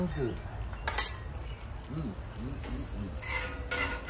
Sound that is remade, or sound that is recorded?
recorded